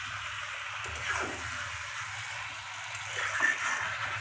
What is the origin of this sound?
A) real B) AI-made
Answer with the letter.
A